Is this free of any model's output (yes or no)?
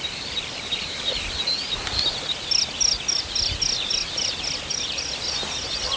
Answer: yes